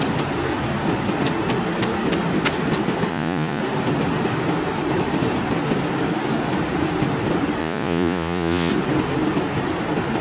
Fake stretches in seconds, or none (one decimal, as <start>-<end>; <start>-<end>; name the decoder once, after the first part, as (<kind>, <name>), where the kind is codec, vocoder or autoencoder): 3.1-3.6 (vocoder, Vocos); 7.6-8.7